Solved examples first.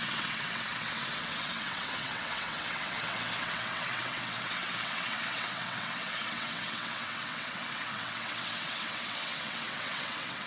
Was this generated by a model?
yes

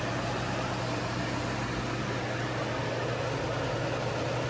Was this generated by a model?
no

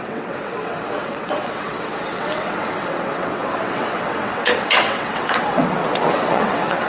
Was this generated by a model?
yes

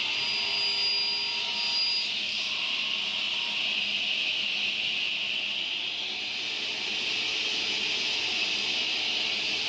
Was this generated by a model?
no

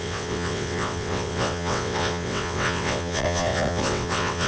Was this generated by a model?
yes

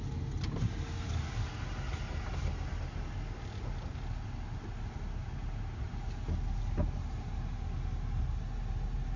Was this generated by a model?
no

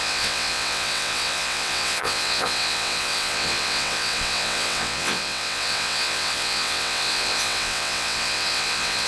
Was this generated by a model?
yes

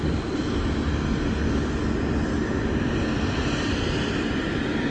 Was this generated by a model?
no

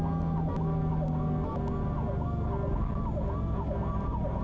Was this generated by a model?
no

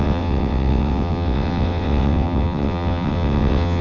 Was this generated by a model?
yes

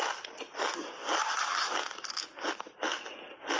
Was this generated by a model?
no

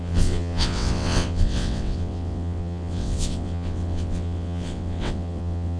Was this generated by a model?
yes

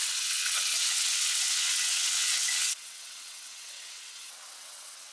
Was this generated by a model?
yes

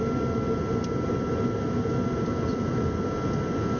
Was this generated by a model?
no